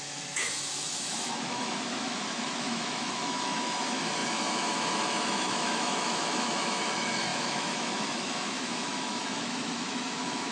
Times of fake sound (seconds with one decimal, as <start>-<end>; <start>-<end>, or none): 0.0-10.5